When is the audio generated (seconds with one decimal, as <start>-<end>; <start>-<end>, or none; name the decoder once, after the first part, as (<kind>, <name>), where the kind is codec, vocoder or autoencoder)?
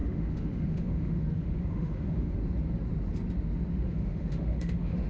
0.0-2.4 (autoencoder, DAC-VAE); 3.7-5.1